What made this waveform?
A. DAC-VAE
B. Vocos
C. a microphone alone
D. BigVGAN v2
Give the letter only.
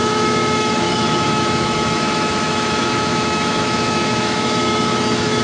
A